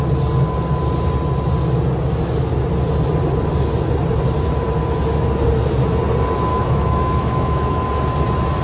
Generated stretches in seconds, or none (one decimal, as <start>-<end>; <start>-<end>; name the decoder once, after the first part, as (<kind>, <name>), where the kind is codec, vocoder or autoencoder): 6.5-7.8 (autoencoder, DAC-VAE)